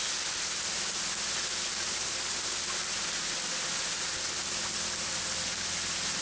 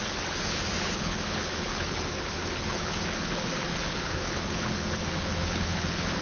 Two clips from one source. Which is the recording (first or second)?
first